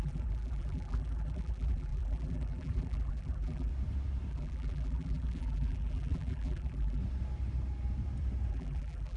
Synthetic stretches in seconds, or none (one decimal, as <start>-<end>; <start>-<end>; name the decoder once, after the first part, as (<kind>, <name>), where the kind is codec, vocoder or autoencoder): 0.0-3.7 (vocoder, BigVGAN v2); 4.3-7.0; 8.5-9.2